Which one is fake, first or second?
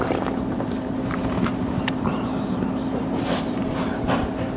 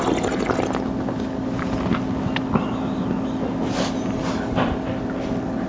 first